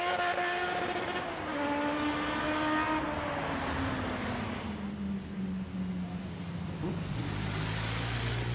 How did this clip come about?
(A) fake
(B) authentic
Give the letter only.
B